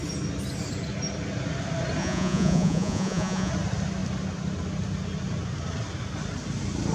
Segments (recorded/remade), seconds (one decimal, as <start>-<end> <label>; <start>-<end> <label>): 0.0-2.0 recorded; 2.0-3.5 remade; 3.5-6.9 recorded